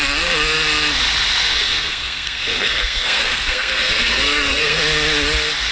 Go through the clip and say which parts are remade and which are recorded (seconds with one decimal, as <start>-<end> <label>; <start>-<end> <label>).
0.0-1.4 recorded; 1.4-4.8 remade; 4.8-5.7 recorded